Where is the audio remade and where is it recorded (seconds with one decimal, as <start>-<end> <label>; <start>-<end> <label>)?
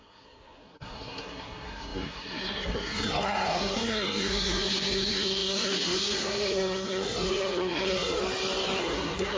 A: 0.0-8.2 remade; 8.2-8.8 recorded; 8.8-9.4 remade